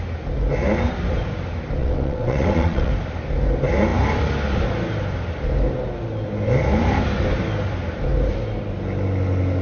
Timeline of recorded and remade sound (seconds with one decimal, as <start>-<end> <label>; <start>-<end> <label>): 0.0-1.8 recorded; 1.8-2.9 remade; 2.9-9.6 recorded